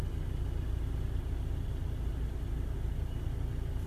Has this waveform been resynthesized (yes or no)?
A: no